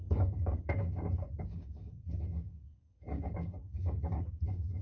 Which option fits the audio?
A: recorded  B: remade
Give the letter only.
B